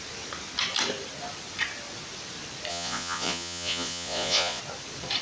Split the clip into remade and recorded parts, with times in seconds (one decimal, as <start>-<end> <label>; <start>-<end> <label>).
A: 0.0-2.7 recorded; 2.7-4.6 remade; 4.6-5.2 recorded